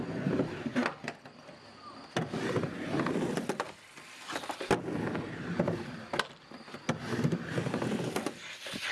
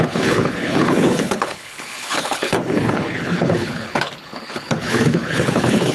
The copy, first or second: second